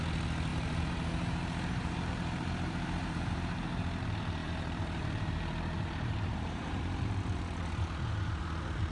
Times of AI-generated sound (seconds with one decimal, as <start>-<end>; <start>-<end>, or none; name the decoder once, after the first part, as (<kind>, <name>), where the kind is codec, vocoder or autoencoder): 0.5-4.0 (vocoder, BigVGAN v2); 4.4-6.8